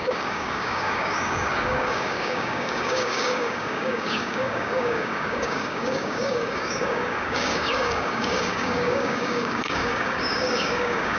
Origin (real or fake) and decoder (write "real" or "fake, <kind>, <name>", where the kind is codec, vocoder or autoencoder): fake, codec, DAC